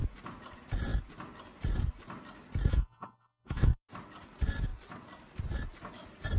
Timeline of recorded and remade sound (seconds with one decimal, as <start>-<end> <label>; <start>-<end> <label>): 0.0-2.7 recorded; 2.7-3.9 remade; 3.9-6.4 recorded